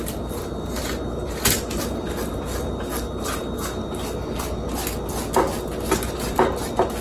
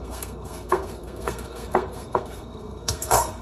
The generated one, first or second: second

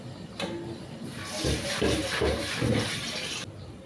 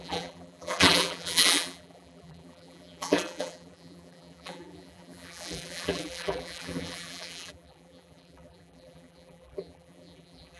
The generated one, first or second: second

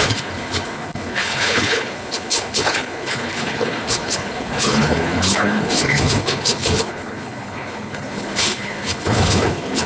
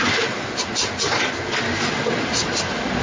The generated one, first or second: first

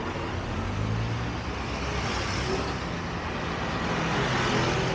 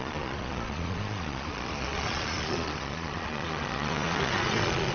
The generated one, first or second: second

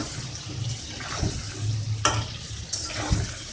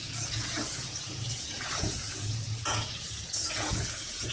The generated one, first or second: second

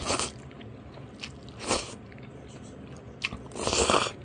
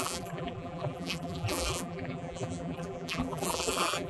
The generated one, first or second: second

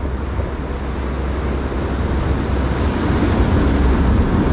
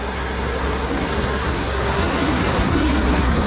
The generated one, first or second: second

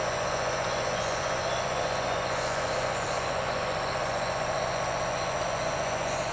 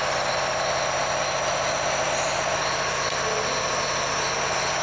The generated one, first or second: first